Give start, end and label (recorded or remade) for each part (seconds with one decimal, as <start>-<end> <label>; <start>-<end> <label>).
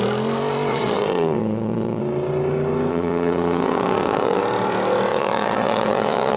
0.0-0.7 recorded; 0.7-2.0 remade; 2.0-2.9 recorded; 2.9-4.4 remade; 4.4-5.1 recorded; 5.1-6.4 remade